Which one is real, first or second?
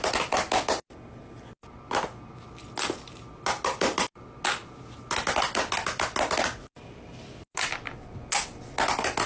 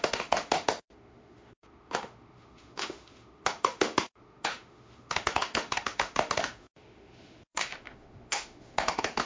first